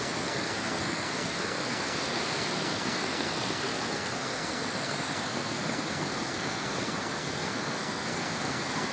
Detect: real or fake fake